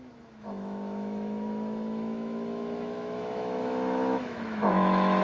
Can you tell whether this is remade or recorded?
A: remade